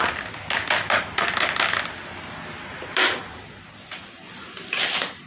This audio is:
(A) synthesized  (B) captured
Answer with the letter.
B